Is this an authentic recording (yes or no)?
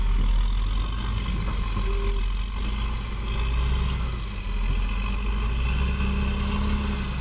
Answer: yes